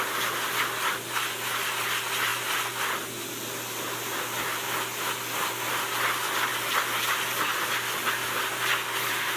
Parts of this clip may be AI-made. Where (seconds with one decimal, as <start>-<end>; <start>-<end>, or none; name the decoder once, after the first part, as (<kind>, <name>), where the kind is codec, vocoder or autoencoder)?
none